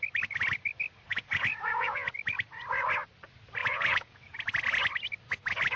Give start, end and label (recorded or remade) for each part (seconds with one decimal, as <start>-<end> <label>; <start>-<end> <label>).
0.0-1.1 recorded; 1.1-2.1 remade; 2.1-3.6 recorded; 3.6-4.4 remade; 4.4-5.8 recorded